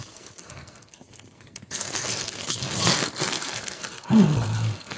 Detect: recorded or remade remade